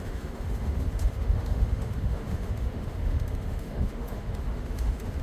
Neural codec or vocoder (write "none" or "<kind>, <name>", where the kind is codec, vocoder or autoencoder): autoencoder, DAC-VAE